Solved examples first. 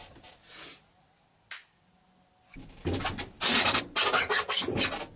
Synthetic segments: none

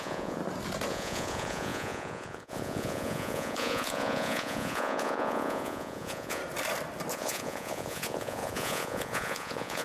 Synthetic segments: 0.0-0.4; 0.9-6.4; 7.1-9.8

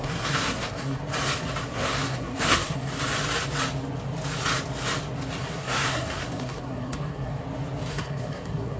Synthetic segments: 0.0-1.0; 1.6-2.9; 5.4-7.4; 7.9-8.8

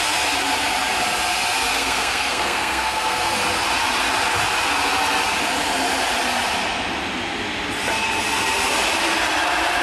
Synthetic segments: 1.7-3.3